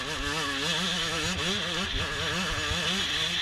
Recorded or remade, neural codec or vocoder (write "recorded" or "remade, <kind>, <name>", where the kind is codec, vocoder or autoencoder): recorded